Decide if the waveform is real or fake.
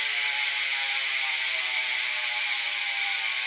fake